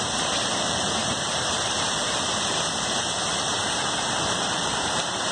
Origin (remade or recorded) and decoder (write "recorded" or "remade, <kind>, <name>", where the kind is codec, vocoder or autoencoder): remade, vocoder, BigVGAN v2